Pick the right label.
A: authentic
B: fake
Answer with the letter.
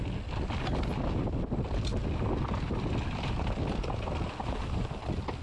A